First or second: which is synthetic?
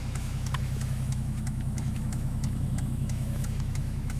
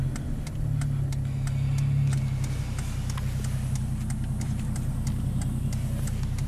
first